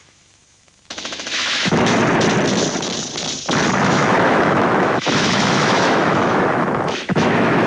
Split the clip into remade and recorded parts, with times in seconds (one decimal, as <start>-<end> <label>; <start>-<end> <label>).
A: 0.0-2.0 remade; 2.0-3.8 recorded; 3.8-7.7 remade